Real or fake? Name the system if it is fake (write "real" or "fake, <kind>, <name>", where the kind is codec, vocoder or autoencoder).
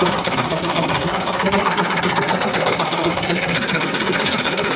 fake, codec, SNAC